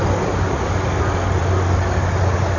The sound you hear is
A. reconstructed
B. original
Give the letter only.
B